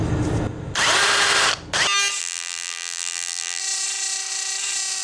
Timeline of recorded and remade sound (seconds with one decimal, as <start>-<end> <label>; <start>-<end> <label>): 0.0-2.2 recorded; 2.2-3.6 remade; 3.6-5.0 recorded